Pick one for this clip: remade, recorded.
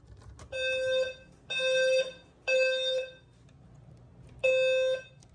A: recorded